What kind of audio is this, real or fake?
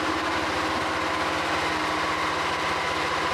real